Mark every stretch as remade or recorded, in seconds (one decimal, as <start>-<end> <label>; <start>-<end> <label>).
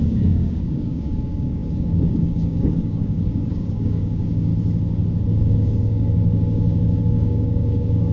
0.0-4.5 remade; 4.5-5.3 recorded; 5.3-8.1 remade